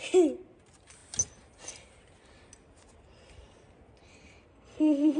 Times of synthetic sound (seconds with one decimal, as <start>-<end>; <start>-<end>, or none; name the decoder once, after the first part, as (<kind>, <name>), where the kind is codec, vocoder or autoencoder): 4.5-5.2 (codec, SNAC)